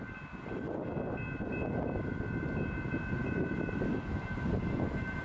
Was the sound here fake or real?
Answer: real